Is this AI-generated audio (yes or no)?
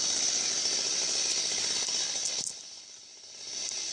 no